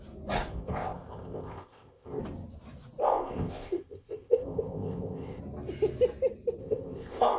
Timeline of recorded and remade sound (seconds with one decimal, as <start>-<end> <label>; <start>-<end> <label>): 0.0-0.5 recorded; 0.5-2.2 remade; 2.2-3.0 recorded; 3.0-5.4 remade; 5.4-6.6 recorded; 6.6-7.4 remade